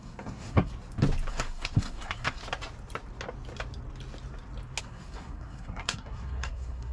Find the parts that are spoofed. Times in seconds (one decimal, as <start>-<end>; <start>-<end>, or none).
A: 0.0-0.7; 1.3-2.4; 4.8-6.9